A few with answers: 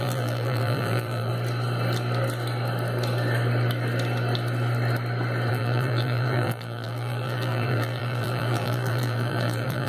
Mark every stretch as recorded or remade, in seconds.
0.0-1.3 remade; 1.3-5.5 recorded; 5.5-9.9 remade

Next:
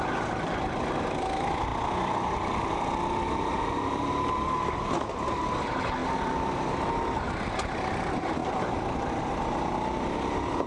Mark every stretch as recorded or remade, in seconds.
0.0-6.0 recorded; 6.0-7.2 remade; 7.2-10.7 recorded

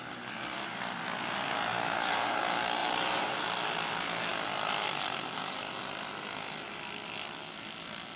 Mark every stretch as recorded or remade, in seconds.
0.0-1.7 recorded; 1.7-2.4 remade; 2.4-2.8 recorded; 2.8-3.5 remade; 3.5-8.2 recorded

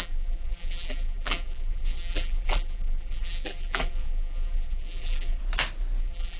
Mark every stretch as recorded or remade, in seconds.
0.0-5.4 remade; 5.4-6.0 recorded; 6.0-6.4 remade

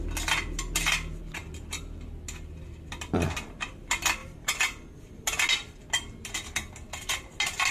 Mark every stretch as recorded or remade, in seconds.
0.0-7.7 recorded

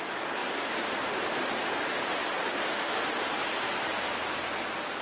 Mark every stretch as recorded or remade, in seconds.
0.0-3.9 recorded; 3.9-4.5 remade; 4.5-5.0 recorded

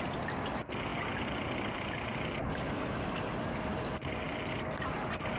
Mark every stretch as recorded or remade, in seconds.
0.0-5.4 recorded

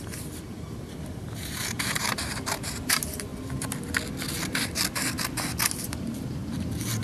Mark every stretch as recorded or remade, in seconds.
0.0-3.3 remade; 3.3-5.7 recorded; 5.7-6.4 remade; 6.4-7.0 recorded